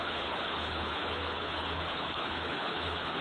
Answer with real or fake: fake